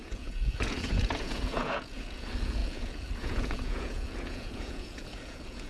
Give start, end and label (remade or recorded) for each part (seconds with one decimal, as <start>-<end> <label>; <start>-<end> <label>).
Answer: 0.0-5.7 remade